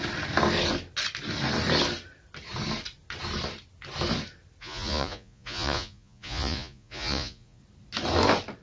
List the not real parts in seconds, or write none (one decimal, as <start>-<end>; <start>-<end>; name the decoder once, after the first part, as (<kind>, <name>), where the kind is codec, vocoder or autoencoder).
4.6-7.6 (vocoder, Vocos)